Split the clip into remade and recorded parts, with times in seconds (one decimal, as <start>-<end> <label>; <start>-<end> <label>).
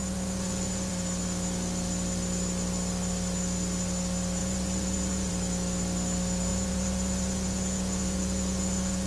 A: 0.0-0.9 remade; 0.9-4.4 recorded; 4.4-5.3 remade; 5.3-6.5 recorded; 6.5-9.1 remade